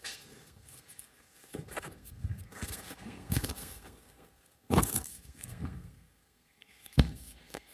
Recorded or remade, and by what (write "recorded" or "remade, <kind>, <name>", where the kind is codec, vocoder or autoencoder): remade, codec, SNAC